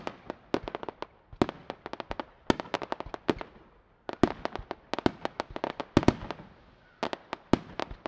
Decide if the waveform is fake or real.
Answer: real